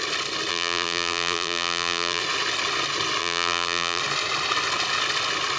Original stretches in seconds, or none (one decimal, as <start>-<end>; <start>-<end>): 0.0-0.5; 2.2-3.2; 4.0-5.6